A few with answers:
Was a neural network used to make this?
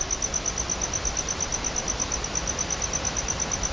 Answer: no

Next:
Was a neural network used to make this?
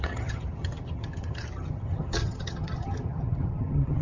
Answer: yes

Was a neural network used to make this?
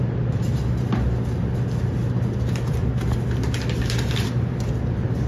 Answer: no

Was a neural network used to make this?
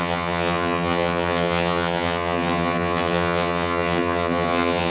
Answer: yes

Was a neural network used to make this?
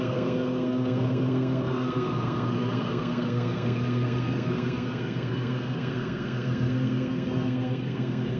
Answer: yes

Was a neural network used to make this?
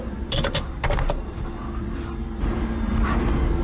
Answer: no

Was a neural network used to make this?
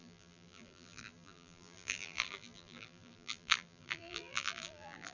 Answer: yes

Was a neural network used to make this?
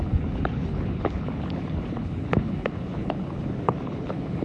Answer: yes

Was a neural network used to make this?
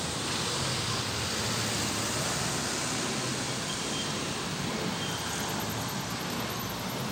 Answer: no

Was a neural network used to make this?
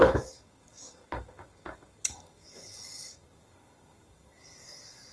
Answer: yes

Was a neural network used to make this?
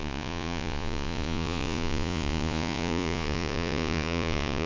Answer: yes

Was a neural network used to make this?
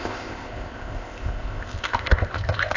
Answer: yes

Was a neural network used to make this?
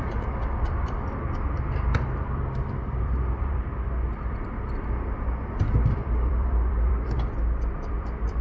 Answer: yes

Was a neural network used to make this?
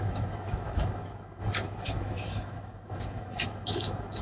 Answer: yes